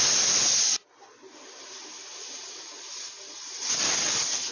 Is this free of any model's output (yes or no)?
yes